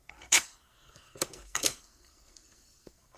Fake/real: fake